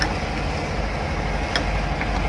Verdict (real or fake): real